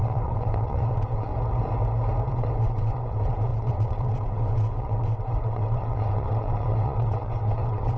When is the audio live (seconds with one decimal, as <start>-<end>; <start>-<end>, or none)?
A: 1.3-2.3